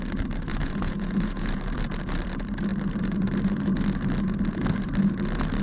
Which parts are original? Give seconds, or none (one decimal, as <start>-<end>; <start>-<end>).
0.0-0.5; 1.6-5.6